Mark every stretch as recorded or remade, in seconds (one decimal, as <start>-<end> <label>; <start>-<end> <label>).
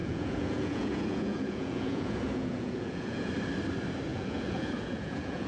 0.0-3.3 remade; 3.3-4.1 recorded; 4.1-5.5 remade